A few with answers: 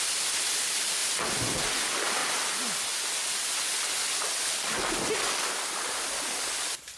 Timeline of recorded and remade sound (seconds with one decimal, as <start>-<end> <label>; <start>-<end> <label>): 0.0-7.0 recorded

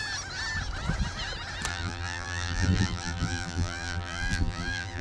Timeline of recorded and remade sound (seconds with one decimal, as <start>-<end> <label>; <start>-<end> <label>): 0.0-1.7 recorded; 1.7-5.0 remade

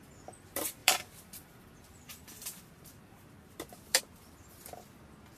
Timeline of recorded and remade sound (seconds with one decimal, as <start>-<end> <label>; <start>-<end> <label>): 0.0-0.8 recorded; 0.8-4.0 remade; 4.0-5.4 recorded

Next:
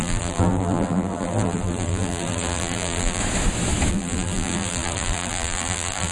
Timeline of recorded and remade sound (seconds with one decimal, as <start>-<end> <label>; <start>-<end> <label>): 0.0-3.2 remade; 3.2-3.9 recorded; 3.9-6.1 remade

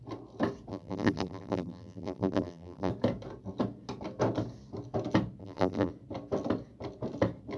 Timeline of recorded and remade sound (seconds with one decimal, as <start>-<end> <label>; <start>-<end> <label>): 0.0-0.7 recorded; 0.7-2.9 remade; 2.9-5.4 recorded; 5.4-5.9 remade; 5.9-7.6 recorded

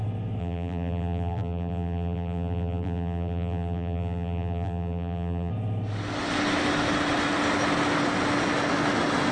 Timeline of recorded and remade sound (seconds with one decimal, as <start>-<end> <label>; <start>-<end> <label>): 0.0-0.4 recorded; 0.4-5.5 remade; 5.5-9.3 recorded

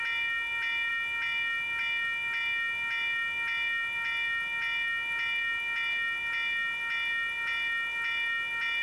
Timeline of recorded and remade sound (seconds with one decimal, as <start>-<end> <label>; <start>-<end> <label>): 0.0-8.8 recorded

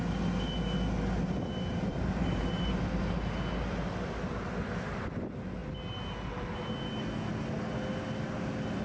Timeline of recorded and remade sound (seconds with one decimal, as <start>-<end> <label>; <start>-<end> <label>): 0.0-1.9 recorded; 1.9-3.0 remade; 3.0-8.8 recorded